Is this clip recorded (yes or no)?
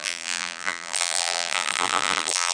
no